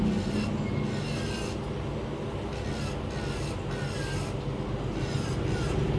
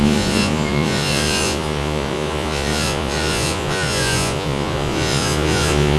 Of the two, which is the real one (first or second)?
first